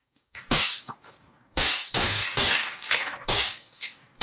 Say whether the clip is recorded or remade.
remade